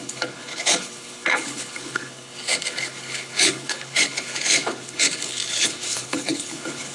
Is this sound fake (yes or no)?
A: yes